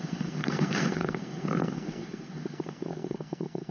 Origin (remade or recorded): remade